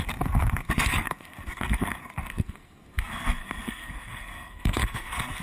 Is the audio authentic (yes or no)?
no